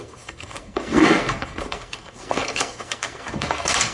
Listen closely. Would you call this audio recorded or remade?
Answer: remade